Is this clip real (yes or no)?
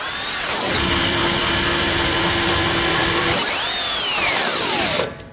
no